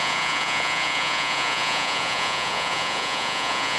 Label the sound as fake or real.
fake